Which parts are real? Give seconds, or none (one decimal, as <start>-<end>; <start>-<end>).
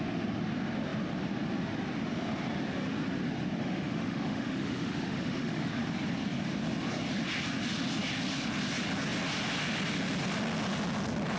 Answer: 0.0-3.6; 5.7-11.4